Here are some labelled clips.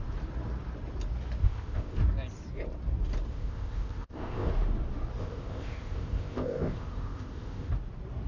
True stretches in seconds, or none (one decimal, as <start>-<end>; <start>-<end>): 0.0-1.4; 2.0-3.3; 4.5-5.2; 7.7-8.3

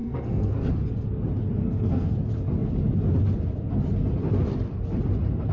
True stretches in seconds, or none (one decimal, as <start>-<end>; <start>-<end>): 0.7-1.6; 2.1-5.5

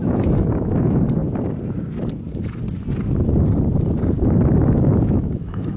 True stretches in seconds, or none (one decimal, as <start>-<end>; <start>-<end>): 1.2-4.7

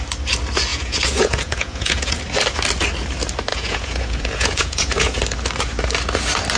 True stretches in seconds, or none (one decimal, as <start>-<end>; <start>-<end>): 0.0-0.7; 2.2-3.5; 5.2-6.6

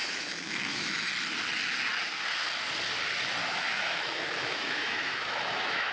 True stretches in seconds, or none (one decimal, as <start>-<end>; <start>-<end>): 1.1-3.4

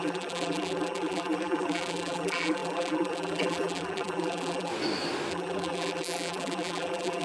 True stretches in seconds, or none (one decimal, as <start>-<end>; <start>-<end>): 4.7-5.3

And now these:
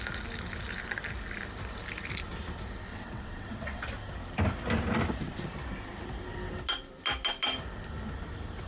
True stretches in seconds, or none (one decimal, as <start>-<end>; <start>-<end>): 0.0-2.9; 3.8-8.7

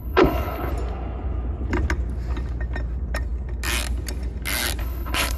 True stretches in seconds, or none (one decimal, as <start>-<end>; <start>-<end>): 0.7-4.8